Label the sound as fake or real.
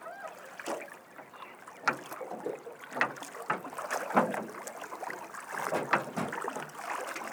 real